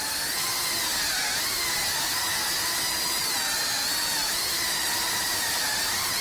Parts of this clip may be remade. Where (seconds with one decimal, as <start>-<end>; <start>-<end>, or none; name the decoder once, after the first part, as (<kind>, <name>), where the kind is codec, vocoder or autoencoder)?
none